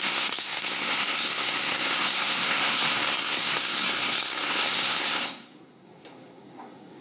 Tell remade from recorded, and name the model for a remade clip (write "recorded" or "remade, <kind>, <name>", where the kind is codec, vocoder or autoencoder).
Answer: remade, codec, SNAC